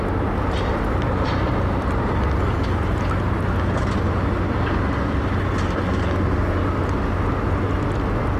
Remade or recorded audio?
recorded